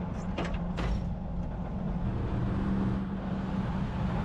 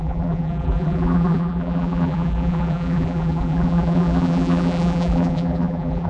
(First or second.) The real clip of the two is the first